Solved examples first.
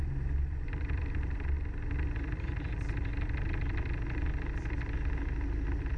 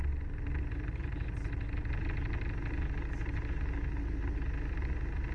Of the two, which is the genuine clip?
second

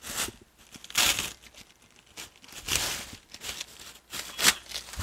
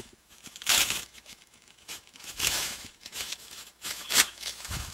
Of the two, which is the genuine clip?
first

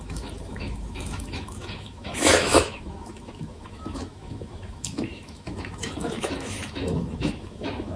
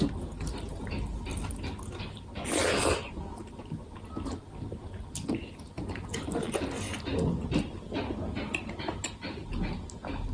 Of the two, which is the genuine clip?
second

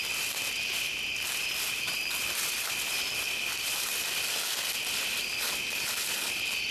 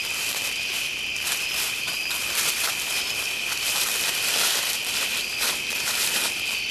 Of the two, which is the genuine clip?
first